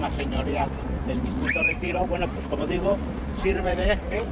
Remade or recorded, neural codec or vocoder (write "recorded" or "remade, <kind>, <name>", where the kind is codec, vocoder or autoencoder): remade, vocoder, Vocos